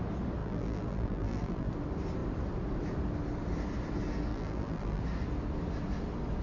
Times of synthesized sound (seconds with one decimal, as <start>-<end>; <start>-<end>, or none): 0.4-1.7; 4.3-5.0